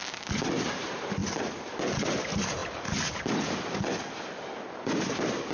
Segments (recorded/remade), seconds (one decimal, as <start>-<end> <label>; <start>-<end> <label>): 0.0-5.5 recorded